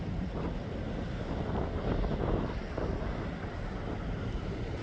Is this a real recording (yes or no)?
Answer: yes